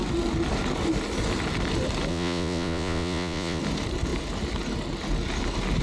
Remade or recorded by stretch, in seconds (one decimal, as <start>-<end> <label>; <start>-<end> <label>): 0.0-2.1 recorded; 2.1-3.6 remade; 3.6-5.8 recorded